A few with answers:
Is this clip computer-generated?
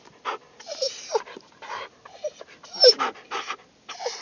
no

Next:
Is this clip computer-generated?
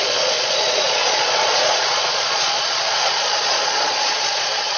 yes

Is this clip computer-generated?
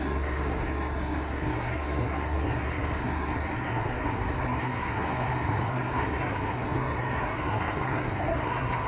yes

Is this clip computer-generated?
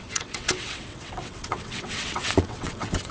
yes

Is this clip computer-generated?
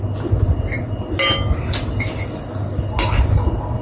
no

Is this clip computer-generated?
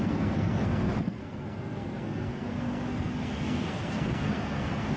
yes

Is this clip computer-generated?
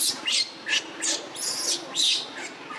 no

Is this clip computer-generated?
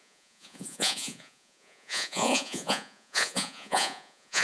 yes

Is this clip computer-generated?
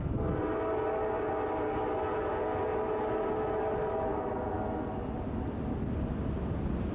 no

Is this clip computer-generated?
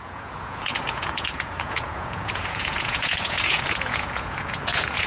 yes